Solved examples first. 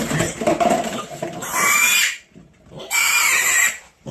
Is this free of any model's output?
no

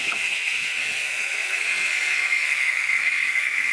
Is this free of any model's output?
no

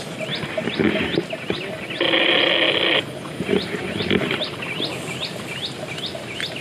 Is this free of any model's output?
yes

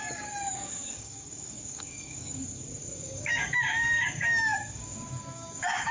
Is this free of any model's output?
no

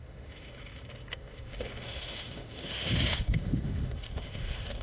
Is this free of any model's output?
no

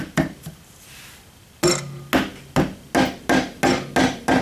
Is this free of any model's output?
yes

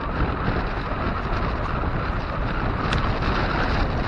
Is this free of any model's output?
yes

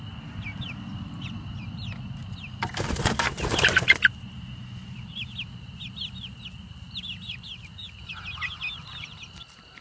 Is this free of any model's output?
yes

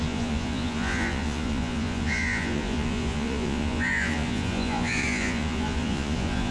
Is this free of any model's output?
no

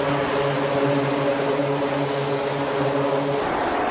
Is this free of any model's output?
yes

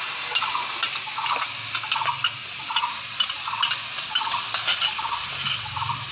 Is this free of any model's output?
yes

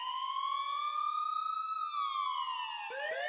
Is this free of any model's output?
yes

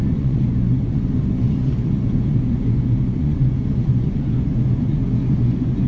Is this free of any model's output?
no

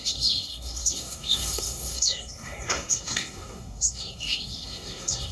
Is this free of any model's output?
no